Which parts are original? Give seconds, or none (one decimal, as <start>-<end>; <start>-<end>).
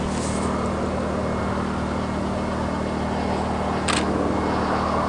0.0-5.1